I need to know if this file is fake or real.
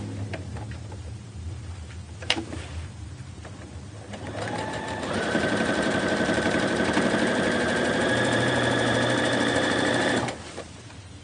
fake